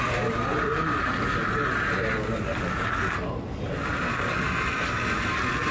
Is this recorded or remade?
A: recorded